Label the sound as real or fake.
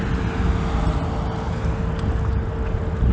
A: real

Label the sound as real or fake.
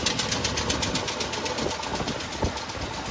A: real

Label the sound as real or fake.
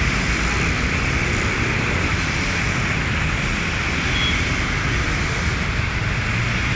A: real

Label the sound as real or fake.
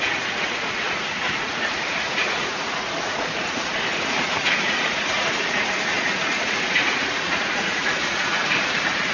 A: fake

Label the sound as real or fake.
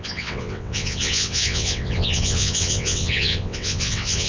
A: fake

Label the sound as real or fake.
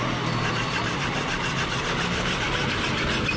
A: real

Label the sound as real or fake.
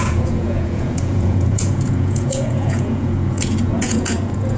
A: fake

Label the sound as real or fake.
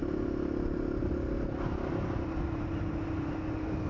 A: real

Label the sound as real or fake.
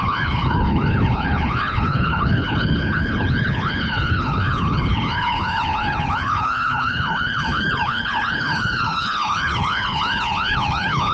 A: fake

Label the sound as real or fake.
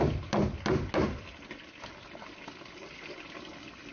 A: real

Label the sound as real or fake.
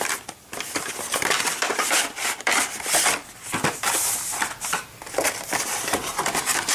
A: fake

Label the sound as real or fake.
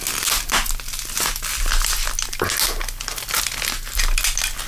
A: real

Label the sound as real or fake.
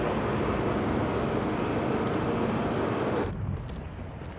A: real